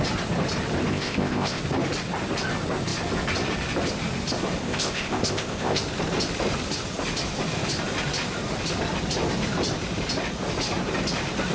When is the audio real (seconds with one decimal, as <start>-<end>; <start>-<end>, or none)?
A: 0.0-0.9; 1.6-4.6; 5.8-11.5